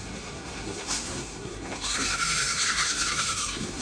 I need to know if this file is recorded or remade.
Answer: remade